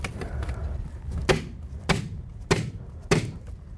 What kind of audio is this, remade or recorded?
recorded